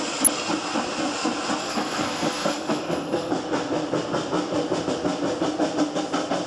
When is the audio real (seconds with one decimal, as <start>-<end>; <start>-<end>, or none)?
0.0-1.6; 3.3-6.5